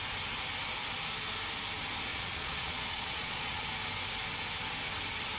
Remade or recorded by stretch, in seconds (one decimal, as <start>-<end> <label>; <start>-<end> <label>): 0.0-2.1 recorded; 2.1-3.7 remade; 3.7-5.4 recorded